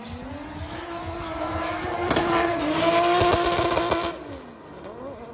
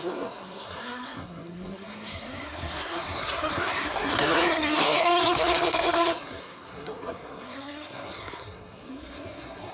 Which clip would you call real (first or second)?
first